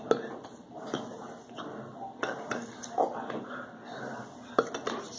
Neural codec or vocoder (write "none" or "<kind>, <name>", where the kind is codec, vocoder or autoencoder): none